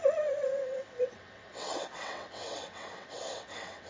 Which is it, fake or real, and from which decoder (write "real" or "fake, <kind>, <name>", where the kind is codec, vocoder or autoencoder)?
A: fake, vocoder, WaveNeXt